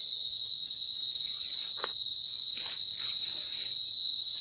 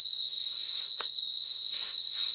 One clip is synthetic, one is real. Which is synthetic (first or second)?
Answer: second